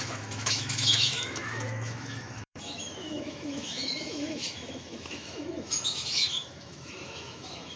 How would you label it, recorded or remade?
remade